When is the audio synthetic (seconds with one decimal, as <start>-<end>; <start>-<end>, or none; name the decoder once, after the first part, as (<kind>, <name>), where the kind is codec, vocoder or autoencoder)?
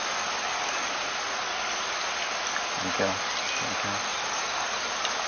4.1-5.3 (vocoder, BigVGAN v2)